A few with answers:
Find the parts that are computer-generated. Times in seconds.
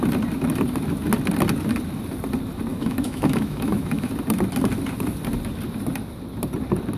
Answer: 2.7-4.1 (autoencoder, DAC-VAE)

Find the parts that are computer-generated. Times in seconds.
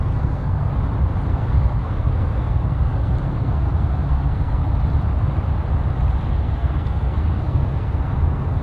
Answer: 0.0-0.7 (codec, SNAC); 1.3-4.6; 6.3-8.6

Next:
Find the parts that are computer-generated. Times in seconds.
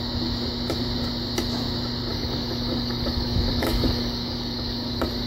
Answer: 2.1-5.3 (codec, DAC)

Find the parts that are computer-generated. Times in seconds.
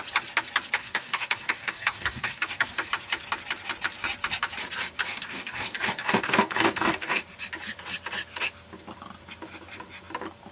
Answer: 0.8-2.9 (codec, DAC); 5.1-7.2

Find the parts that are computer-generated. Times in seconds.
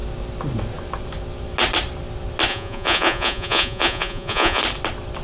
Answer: 2.5-4.6 (vocoder, Vocos)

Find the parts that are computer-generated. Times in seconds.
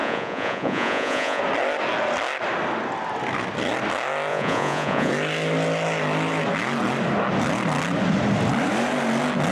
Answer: 0.0-1.4 (vocoder, Vocos); 4.3-5.1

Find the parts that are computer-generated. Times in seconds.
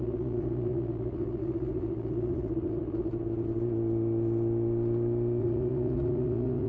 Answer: 0.0-3.1 (vocoder, Vocos); 5.4-6.7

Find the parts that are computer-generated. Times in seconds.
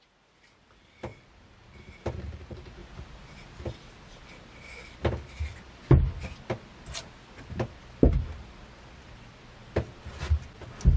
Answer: 2.8-3.6 (vocoder, BigVGAN v2)